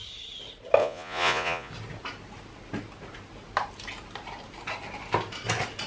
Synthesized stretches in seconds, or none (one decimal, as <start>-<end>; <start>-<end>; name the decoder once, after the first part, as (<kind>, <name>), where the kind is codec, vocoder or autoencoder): 0.8-1.7 (vocoder, Vocos)